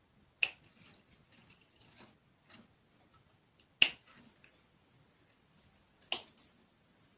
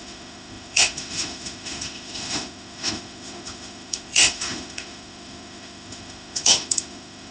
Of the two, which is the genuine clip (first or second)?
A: first